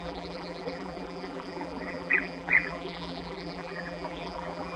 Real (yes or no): no